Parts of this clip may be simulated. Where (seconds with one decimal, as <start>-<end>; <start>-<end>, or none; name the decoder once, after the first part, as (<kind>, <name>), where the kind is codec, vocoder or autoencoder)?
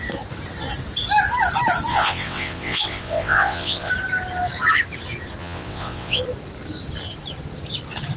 1.9-3.9 (vocoder, WaveNeXt); 5.4-6.2